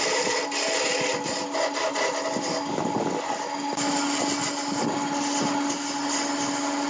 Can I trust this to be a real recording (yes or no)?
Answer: yes